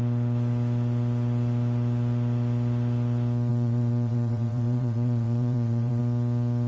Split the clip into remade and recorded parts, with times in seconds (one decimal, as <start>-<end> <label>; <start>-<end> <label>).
0.0-3.5 recorded; 3.5-6.0 remade; 6.0-6.7 recorded